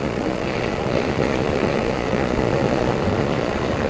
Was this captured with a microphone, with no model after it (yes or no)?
no